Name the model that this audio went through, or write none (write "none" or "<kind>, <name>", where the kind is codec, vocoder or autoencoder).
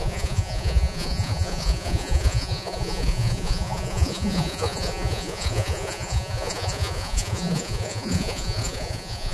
vocoder, Vocos